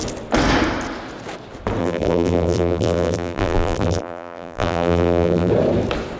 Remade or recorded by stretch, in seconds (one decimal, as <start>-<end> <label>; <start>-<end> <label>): 0.0-1.8 recorded; 1.8-5.5 remade; 5.5-6.2 recorded